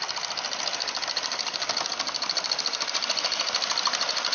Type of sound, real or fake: real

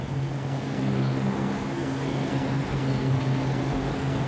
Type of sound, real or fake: fake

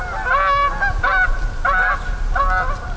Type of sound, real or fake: real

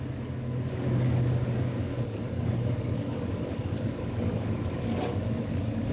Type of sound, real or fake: fake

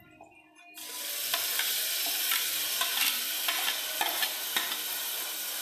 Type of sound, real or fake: real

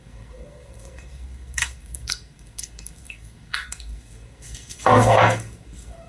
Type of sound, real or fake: fake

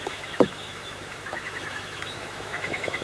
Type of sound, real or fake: fake